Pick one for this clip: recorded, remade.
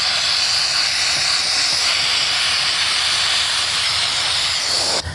recorded